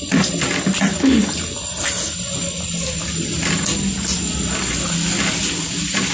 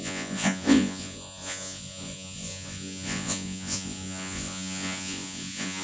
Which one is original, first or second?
first